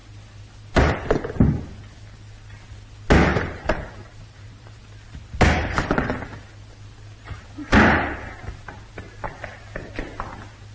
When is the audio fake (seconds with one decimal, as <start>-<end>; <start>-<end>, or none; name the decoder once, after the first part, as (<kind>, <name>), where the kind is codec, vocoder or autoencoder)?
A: 3.3-4.8 (vocoder, BigVGAN v2)